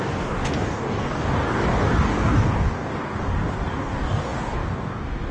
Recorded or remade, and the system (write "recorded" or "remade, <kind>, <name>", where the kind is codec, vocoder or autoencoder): remade, codec, DAC